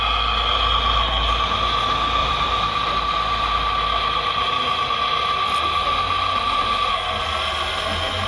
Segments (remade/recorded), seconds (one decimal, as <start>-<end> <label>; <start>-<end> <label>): 0.0-2.2 recorded; 2.2-2.9 remade; 2.9-8.3 recorded